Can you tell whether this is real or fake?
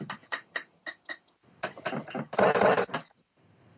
real